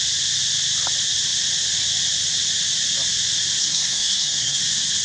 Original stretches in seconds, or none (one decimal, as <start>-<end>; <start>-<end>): 0.0-3.6; 4.6-5.0